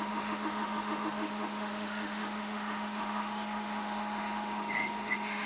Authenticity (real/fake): fake